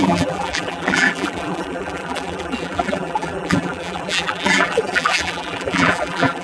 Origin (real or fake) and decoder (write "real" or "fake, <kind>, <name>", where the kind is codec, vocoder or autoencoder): fake, vocoder, BigVGAN v2